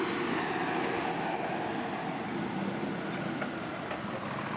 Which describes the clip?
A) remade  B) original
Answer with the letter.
B